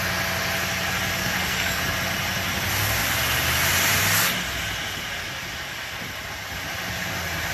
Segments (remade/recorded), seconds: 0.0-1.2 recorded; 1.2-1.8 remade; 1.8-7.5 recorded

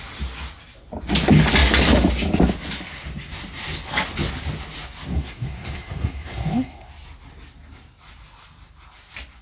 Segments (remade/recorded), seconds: 0.0-5.1 recorded; 5.1-6.9 remade; 6.9-9.4 recorded

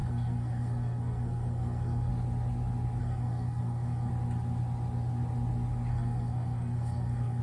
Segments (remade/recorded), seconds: 0.0-2.1 remade; 2.1-3.0 recorded; 3.0-4.1 remade; 4.1-5.9 recorded; 5.9-7.4 remade

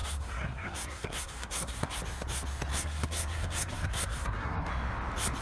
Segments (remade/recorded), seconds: 0.0-2.0 remade; 2.0-2.7 recorded; 2.7-4.7 remade; 4.7-5.4 recorded

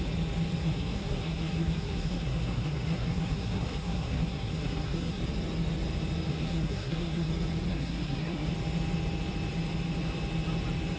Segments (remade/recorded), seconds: 0.0-0.6 recorded; 0.6-5.2 remade; 5.2-6.3 recorded; 6.3-7.3 remade; 7.3-7.7 recorded; 7.7-8.5 remade; 8.5-11.0 recorded

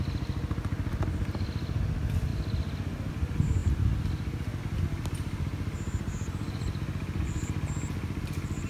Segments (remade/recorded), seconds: 0.0-8.7 recorded